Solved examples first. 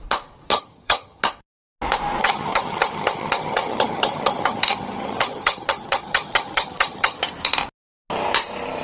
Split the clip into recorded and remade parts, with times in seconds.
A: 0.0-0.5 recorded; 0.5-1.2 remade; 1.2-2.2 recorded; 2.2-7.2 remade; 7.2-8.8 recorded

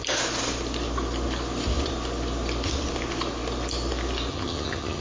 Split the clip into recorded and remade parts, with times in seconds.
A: 0.0-4.3 recorded; 4.3-5.0 remade